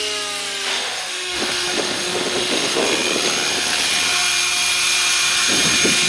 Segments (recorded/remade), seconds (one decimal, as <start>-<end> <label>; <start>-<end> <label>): 0.0-0.7 recorded; 0.7-2.8 remade; 2.8-6.1 recorded